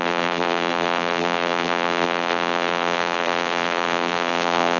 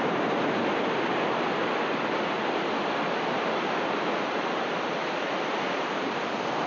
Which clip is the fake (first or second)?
first